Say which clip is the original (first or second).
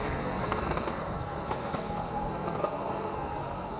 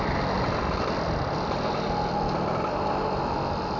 second